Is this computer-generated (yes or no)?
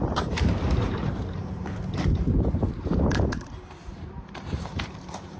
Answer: yes